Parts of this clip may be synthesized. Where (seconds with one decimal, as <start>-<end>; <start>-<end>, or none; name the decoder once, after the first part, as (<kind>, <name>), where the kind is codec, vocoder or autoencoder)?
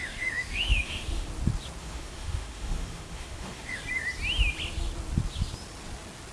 0.0-1.3 (autoencoder, DAC-VAE); 1.8-3.8